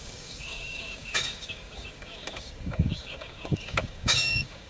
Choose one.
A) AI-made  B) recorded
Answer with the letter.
A